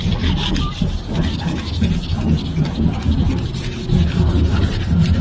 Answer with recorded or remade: recorded